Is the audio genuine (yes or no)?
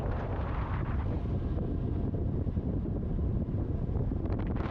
no